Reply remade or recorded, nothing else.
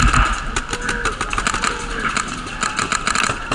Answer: recorded